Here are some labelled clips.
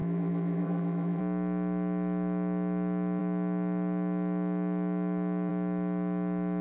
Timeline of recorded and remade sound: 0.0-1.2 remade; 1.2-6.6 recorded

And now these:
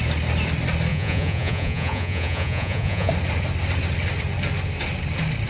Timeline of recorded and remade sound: 0.0-0.9 recorded; 0.9-3.1 remade; 3.1-5.5 recorded

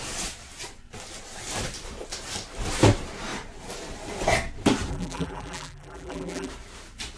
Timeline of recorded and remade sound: 0.0-4.9 recorded; 4.9-6.5 remade; 6.5-7.2 recorded

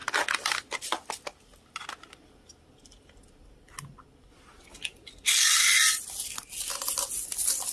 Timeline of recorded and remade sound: 0.0-7.7 recorded

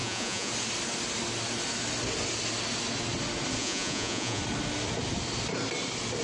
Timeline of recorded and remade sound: 0.0-0.5 remade; 0.5-3.6 recorded; 3.6-4.4 remade; 4.4-6.2 recorded